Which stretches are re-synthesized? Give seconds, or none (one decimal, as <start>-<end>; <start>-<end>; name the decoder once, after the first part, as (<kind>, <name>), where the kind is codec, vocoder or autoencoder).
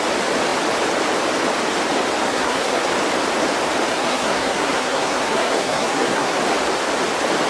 2.3-2.9 (codec, SNAC); 3.9-6.4